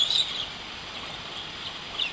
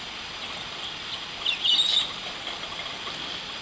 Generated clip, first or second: first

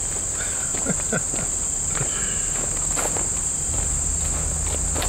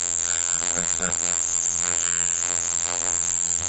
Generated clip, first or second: second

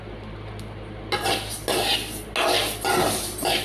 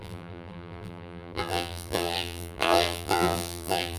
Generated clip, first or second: second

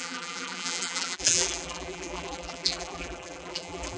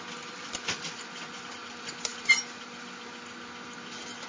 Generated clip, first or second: first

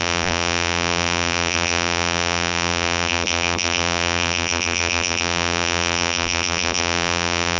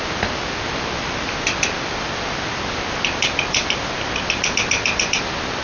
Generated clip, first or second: first